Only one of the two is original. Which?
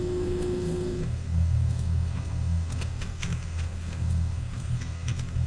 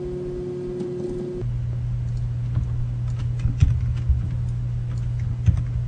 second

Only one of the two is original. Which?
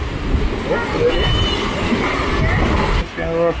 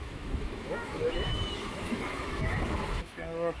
first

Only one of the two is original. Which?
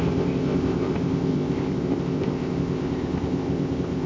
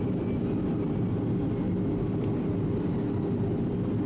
second